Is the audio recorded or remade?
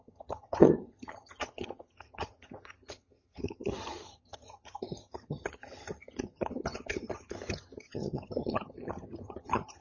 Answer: remade